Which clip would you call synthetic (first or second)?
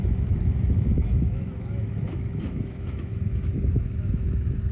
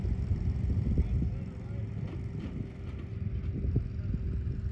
first